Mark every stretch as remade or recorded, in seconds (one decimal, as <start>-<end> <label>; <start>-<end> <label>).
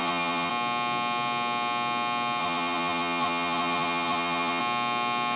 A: 0.0-0.5 remade; 0.5-2.4 recorded; 2.4-4.6 remade; 4.6-5.4 recorded